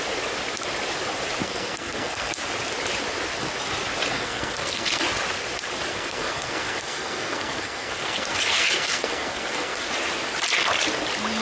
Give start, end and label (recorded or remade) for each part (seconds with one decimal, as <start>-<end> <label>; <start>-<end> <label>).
0.0-1.4 recorded; 1.4-2.4 remade; 2.4-4.1 recorded; 4.1-5.0 remade; 5.0-5.9 recorded; 5.9-9.9 remade; 9.9-11.4 recorded